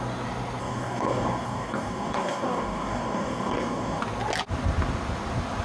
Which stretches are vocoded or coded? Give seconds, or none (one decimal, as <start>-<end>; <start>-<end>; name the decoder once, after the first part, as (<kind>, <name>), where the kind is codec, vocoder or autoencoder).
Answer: 0.6-4.0 (codec, DAC)